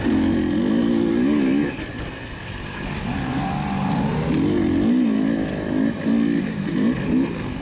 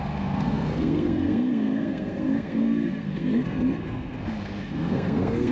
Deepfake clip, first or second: second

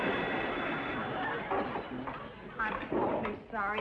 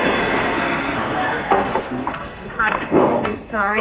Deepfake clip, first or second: second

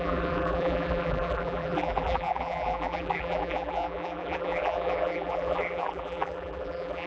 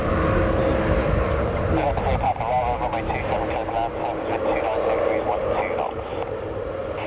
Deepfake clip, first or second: first